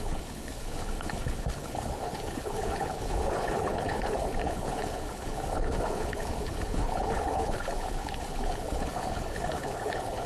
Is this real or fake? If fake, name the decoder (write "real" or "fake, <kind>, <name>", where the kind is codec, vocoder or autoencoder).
fake, codec, HILCodec